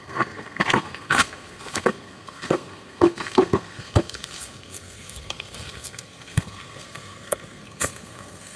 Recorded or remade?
remade